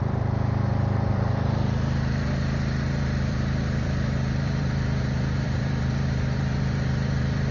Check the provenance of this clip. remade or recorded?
remade